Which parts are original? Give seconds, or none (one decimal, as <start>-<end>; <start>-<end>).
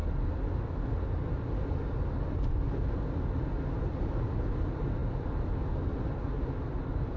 0.0-7.2